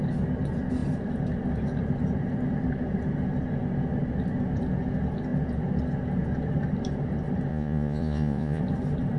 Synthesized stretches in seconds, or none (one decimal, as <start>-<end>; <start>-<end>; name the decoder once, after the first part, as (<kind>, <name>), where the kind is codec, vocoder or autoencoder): 7.5-8.6 (vocoder, Vocos)